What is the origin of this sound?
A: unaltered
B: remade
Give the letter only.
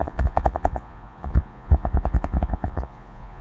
B